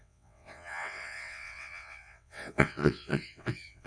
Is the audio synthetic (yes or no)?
yes